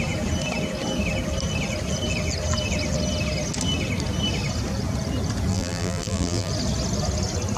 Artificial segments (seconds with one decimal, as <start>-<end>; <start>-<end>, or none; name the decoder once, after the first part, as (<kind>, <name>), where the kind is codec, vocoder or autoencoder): 5.5-6.5 (vocoder, BigVGAN v2)